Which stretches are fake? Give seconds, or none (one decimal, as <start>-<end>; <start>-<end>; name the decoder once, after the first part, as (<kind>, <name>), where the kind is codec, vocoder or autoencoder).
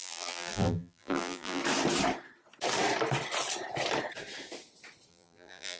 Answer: 0.0-1.6 (vocoder, BigVGAN v2); 5.1-5.8